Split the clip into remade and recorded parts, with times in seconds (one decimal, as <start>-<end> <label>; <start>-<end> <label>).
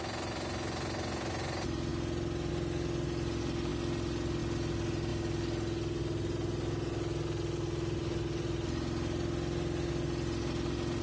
0.0-11.0 recorded